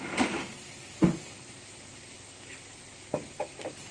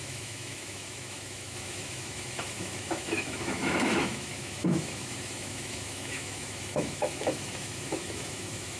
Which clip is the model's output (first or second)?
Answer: second